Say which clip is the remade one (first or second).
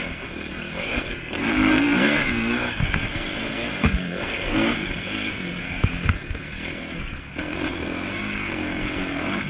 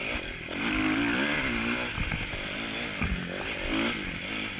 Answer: first